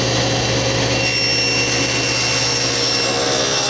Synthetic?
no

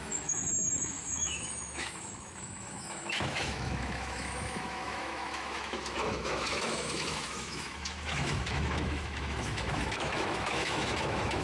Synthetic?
yes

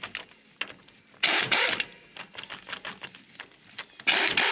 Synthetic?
no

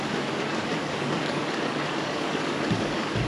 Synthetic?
yes